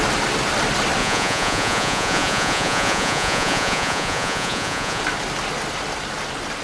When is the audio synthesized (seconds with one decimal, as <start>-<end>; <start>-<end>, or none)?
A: 1.0-5.0